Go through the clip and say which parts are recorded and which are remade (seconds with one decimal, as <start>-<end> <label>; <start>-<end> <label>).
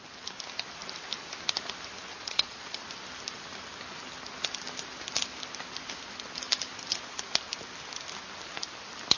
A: 0.0-2.1 recorded; 2.1-2.8 remade; 2.8-9.2 recorded